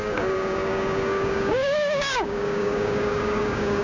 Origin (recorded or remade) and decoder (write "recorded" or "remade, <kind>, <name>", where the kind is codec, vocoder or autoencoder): remade, codec, DAC